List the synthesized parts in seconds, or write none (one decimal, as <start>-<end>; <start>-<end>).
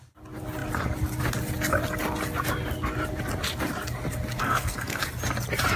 4.4-5.0